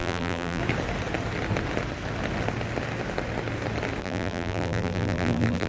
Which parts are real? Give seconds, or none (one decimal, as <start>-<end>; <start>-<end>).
0.6-4.0